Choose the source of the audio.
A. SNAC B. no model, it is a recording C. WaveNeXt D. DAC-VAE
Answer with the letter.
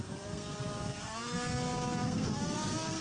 A